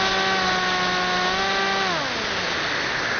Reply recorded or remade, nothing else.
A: recorded